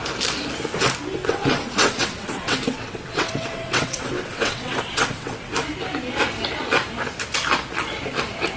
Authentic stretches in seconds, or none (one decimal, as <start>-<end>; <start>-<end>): 0.0-1.2; 5.5-8.6